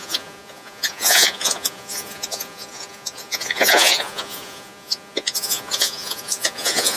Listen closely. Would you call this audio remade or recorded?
remade